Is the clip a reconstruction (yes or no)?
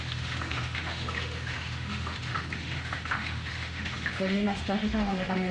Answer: yes